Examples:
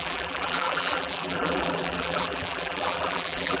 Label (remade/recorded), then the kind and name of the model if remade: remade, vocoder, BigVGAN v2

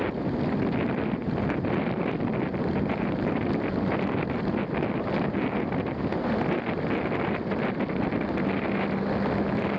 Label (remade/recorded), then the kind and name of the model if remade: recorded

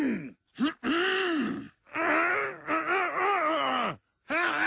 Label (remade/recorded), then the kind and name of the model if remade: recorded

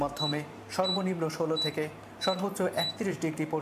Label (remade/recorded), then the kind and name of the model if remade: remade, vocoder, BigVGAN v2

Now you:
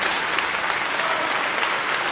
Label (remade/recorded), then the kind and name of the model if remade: recorded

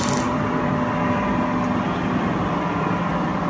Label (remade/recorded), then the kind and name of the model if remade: remade, vocoder, BigVGAN v2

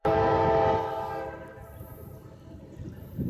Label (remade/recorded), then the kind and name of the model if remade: remade, vocoder, BigVGAN v2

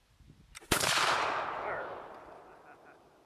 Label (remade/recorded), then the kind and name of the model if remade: recorded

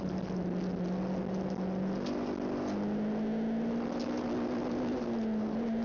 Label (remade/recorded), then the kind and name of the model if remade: recorded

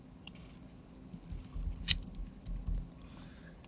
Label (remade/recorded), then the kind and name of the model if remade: recorded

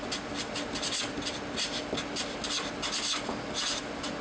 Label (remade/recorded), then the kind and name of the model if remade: recorded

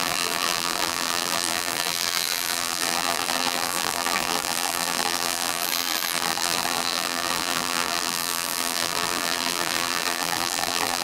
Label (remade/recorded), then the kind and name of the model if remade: remade, vocoder, BigVGAN v2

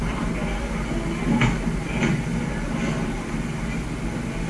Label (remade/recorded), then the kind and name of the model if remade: recorded